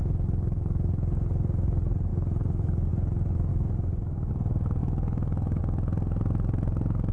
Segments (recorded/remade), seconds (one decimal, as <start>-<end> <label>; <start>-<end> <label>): 0.0-2.1 recorded; 2.1-2.9 remade; 2.9-3.5 recorded; 3.5-4.3 remade; 4.3-4.8 recorded; 4.8-5.6 remade; 5.6-7.1 recorded